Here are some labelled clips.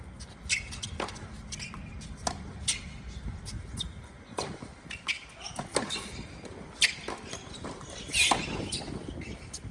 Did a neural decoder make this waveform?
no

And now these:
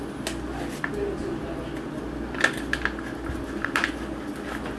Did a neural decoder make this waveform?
no